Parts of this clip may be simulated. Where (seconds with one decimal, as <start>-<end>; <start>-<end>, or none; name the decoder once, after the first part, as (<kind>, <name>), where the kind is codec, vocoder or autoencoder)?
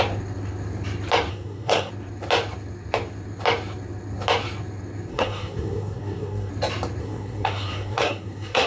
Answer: 1.3-1.9 (codec, SNAC); 5.1-6.5; 7.0-8.7